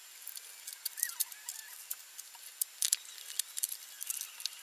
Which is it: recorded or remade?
recorded